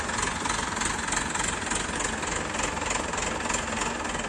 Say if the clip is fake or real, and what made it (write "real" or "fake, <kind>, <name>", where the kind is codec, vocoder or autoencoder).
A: real